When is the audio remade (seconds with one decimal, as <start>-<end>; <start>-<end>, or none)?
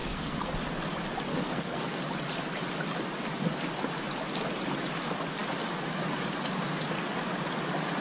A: 0.0-0.5; 1.3-2.0